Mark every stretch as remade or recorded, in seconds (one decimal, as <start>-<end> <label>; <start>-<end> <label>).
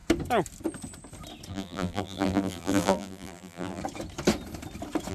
0.0-1.5 recorded; 1.5-3.8 remade; 3.8-5.1 recorded